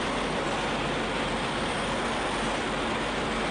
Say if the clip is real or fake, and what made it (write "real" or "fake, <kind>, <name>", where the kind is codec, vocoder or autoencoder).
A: real